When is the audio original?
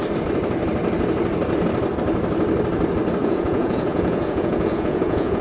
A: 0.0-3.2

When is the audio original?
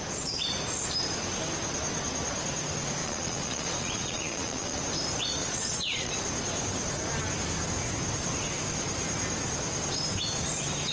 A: 0.0-3.0; 4.8-5.4; 6.1-10.9